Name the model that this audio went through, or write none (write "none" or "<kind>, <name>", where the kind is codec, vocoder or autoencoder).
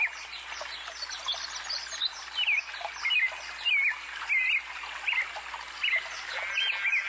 none